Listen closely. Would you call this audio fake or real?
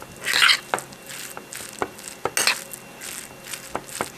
real